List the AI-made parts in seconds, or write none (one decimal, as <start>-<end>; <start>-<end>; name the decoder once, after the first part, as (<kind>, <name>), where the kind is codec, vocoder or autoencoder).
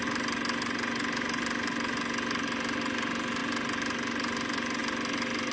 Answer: none